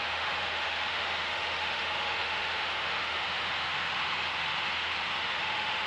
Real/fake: fake